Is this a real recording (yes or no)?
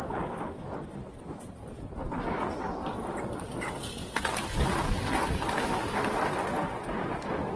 yes